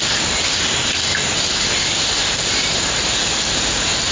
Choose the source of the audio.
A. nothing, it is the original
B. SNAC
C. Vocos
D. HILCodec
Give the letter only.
A